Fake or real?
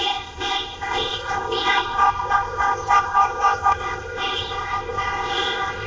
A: fake